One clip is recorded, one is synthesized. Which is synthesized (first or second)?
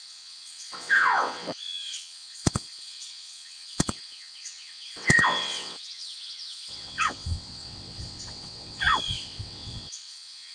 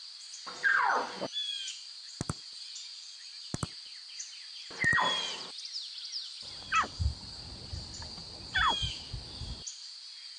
first